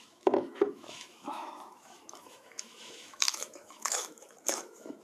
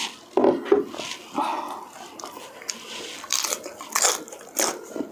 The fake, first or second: first